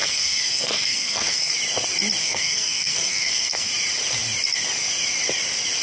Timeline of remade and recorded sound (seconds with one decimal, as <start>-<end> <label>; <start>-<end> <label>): 0.0-1.5 remade; 1.5-2.2 recorded; 2.2-3.7 remade; 3.7-5.8 recorded